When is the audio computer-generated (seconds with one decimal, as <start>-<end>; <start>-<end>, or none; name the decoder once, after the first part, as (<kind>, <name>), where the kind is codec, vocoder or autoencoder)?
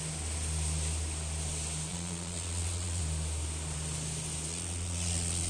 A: 1.9-3.0 (vocoder, Vocos); 4.5-5.5